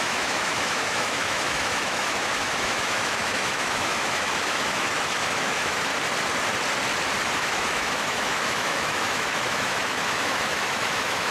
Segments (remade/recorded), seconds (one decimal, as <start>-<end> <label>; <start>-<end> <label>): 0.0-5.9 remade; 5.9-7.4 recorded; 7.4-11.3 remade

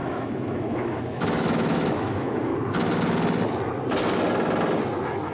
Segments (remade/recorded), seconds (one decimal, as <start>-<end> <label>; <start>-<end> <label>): 0.0-2.5 remade; 2.5-5.3 recorded

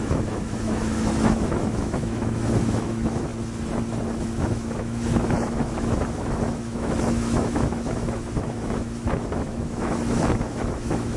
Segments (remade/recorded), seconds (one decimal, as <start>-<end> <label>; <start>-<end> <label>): 0.0-3.3 remade; 3.3-4.1 recorded; 4.1-11.2 remade

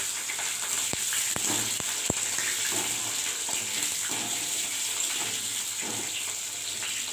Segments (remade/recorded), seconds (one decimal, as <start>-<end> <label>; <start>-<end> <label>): 0.0-7.1 recorded